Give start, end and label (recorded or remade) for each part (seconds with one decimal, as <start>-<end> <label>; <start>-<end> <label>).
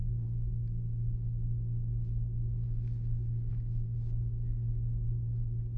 0.0-5.8 recorded